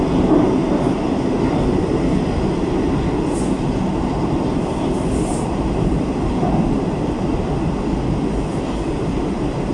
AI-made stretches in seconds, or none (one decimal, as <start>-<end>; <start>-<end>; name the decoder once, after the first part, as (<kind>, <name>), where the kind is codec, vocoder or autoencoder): 5.3-6.4 (vocoder, BigVGAN v2)